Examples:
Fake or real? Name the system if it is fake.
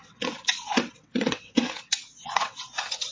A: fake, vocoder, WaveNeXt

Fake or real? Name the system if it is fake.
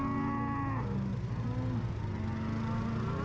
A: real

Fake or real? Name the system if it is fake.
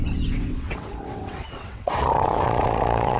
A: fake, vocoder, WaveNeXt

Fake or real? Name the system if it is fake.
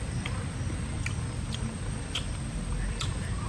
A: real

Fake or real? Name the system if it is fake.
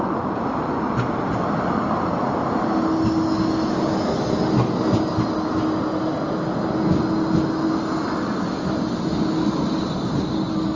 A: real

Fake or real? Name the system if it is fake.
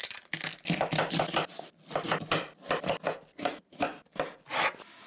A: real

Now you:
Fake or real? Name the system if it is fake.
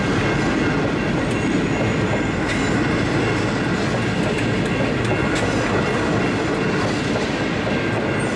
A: real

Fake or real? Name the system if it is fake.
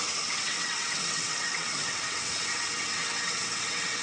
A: fake, vocoder, WaveNeXt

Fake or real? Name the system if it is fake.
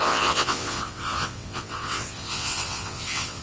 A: fake, vocoder, WaveNeXt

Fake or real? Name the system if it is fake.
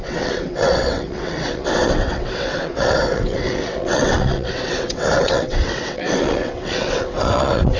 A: fake, vocoder, WaveNeXt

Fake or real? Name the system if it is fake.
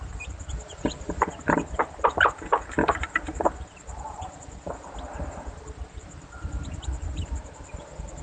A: real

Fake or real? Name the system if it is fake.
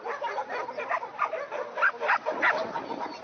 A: real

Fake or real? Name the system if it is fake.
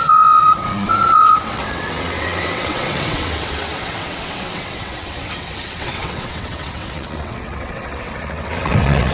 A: fake, vocoder, WaveNeXt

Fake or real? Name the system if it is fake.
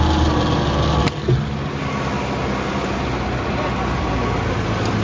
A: real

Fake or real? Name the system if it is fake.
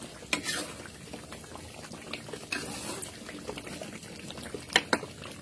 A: real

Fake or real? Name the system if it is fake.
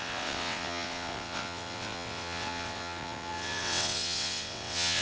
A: fake, vocoder, WaveNeXt